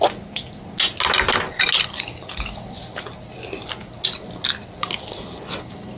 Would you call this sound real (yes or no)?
yes